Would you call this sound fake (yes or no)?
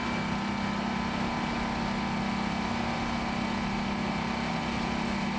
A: no